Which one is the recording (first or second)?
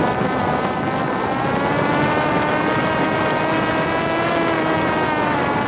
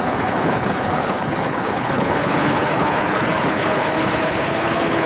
first